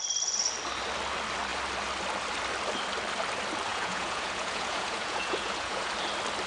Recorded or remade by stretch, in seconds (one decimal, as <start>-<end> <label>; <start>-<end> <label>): 0.0-3.7 recorded; 3.7-5.9 remade; 5.9-6.5 recorded